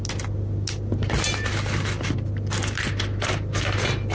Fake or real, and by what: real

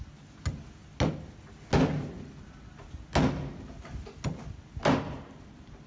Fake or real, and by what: real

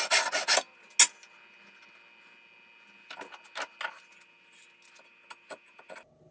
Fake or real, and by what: real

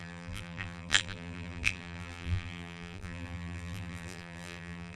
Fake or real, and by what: fake, vocoder, BigVGAN v2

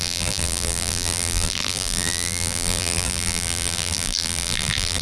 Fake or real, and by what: fake, vocoder, BigVGAN v2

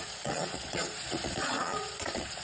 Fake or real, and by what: fake, vocoder, Vocos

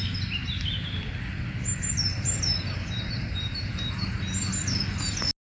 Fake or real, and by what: real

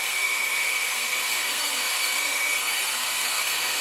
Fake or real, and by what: fake, codec, SNAC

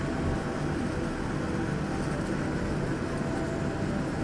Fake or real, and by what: real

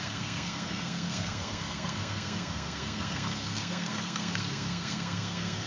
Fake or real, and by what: fake, codec, SNAC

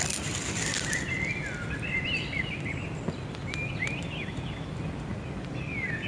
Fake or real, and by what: real